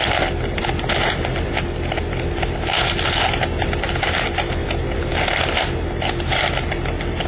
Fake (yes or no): no